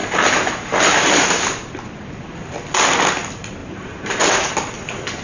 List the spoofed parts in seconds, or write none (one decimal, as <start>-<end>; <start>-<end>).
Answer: 3.6-4.5